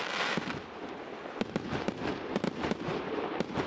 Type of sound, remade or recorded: recorded